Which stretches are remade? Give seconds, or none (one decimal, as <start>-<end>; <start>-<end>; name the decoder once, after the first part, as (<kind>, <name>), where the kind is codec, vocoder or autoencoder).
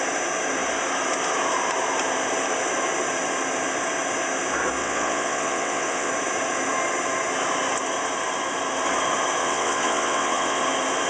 4.8-6.1 (vocoder, WaveNeXt); 9.4-10.6